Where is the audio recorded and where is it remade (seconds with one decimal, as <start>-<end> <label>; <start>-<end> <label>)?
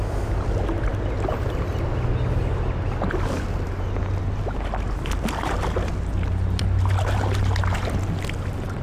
0.0-8.8 recorded